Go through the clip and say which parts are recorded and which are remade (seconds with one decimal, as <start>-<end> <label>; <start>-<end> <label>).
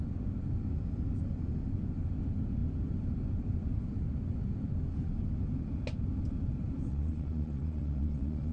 0.0-6.9 recorded; 6.9-8.5 remade